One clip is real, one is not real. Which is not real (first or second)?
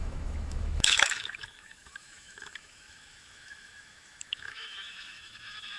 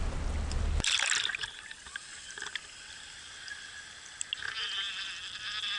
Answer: first